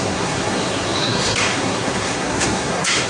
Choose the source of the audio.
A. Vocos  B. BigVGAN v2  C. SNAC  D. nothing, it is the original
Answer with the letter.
C